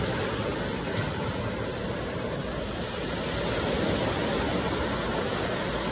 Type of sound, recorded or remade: recorded